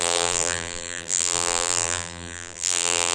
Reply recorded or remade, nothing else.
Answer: remade